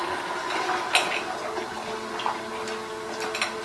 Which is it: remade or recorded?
recorded